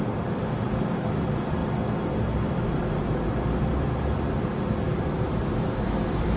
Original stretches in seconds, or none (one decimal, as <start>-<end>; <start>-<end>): 1.6-2.5